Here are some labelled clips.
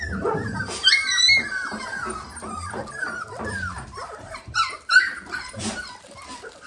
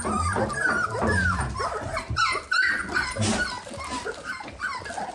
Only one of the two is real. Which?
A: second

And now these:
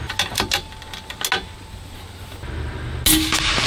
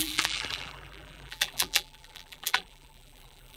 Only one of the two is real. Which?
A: first